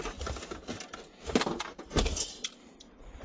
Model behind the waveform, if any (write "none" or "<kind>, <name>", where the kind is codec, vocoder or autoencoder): none